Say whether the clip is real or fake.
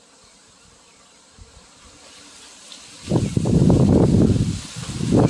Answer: real